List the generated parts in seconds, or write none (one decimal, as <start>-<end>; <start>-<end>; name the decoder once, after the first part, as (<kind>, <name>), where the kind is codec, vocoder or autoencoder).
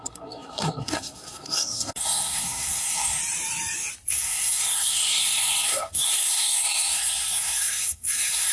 0.0-3.2 (codec, SNAC); 4.1-8.5